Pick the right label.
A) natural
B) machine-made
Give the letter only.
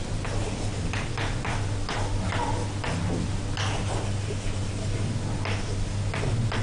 A